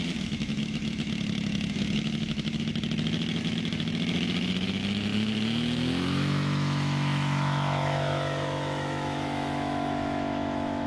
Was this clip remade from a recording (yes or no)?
yes